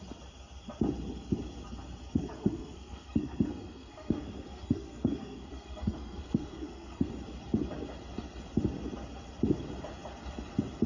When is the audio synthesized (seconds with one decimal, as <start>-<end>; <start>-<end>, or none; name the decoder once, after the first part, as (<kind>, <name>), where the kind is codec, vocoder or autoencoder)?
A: 2.2-7.1 (codec, SNAC)

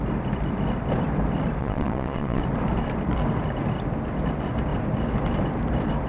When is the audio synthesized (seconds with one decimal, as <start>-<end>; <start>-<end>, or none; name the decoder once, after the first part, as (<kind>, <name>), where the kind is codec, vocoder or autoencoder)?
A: 1.6-2.4 (vocoder, Vocos)

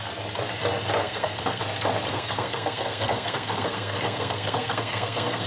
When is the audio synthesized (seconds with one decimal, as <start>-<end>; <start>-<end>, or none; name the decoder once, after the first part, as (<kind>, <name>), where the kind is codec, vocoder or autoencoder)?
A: 1.0-1.6 (codec, SNAC); 2.1-5.5

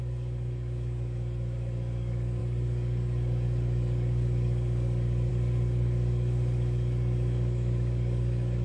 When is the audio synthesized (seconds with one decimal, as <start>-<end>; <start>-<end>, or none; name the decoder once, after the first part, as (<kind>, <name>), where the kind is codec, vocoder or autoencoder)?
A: 0.0-8.6 (codec, DAC)

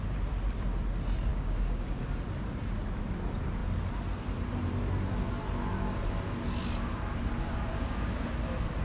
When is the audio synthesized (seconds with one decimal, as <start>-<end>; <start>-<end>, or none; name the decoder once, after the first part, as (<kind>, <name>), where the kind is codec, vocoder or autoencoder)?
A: 1.3-2.0 (codec, DAC); 7.7-8.3

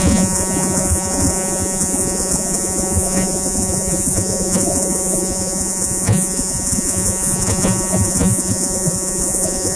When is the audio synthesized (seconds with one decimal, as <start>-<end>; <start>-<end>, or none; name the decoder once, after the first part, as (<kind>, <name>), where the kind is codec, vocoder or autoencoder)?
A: 0.0-9.8 (vocoder, Vocos)

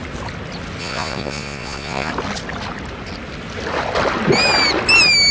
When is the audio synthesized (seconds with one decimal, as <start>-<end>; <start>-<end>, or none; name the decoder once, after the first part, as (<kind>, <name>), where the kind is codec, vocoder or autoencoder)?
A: 0.8-2.1 (vocoder, Vocos)

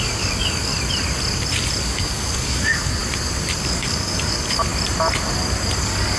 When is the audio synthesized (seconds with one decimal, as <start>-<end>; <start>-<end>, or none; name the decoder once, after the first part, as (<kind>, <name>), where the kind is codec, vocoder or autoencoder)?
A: 0.0-0.7 (codec, DAC); 1.8-3.0; 3.6-4.7; 5.8-6.2